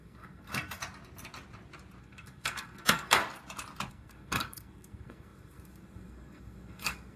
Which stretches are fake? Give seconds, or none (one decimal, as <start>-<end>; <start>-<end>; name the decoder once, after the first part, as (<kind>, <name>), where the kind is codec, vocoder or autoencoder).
0.0-0.8 (codec, SNAC); 2.0-3.2; 3.9-7.2